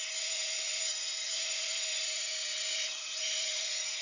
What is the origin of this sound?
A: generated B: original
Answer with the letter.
A